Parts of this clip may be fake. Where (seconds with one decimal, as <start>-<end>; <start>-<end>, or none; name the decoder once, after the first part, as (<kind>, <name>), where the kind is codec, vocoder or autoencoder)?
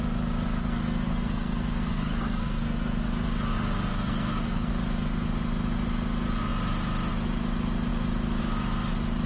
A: 0.6-3.1 (codec, SNAC); 3.9-4.7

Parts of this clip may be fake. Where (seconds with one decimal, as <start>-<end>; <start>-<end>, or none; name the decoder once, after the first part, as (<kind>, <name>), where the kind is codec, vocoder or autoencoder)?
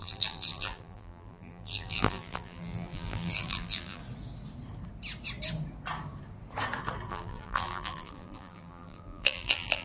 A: 0.0-4.0 (vocoder, BigVGAN v2); 7.1-9.8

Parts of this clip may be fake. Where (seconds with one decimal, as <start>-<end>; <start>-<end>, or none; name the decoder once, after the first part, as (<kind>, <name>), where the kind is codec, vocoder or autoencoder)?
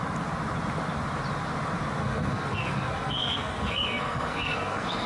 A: 2.0-5.1 (codec, SNAC)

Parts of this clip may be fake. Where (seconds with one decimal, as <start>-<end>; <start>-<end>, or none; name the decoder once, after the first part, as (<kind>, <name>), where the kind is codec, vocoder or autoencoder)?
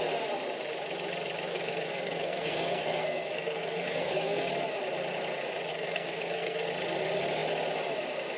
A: 1.5-4.5 (codec, SNAC); 5.7-6.7